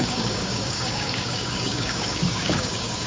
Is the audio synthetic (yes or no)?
yes